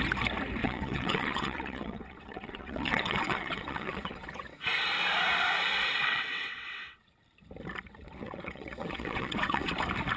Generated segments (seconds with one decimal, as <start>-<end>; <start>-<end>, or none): 0.6-4.6; 6.0-7.1; 8.2-9.7